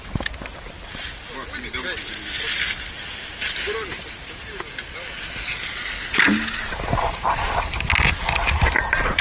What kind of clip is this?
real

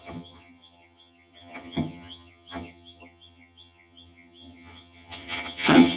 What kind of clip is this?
fake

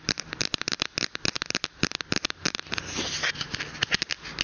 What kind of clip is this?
real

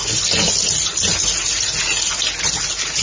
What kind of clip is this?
real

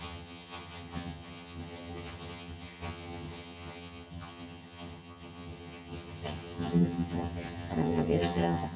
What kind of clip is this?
fake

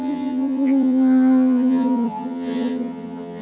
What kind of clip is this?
fake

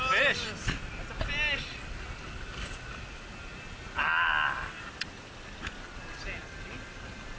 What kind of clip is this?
real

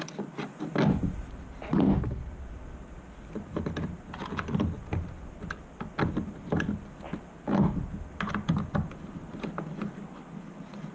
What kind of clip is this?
real